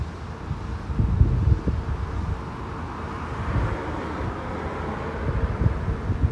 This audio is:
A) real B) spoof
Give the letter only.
A